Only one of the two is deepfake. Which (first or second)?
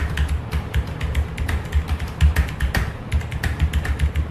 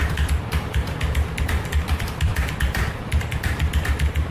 second